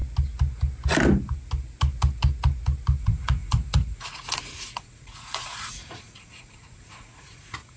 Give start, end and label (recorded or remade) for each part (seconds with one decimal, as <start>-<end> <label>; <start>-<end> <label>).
0.0-3.0 recorded; 3.0-7.8 remade